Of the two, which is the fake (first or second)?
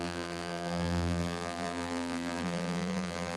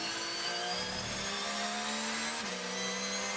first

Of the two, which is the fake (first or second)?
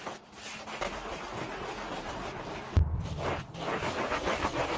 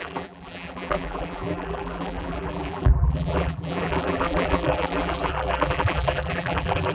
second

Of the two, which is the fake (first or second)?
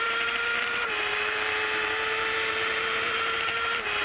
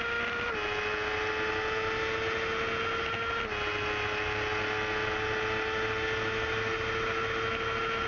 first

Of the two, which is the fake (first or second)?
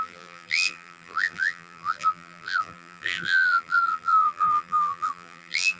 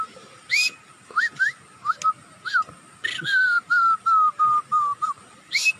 first